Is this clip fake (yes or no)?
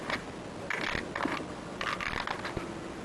no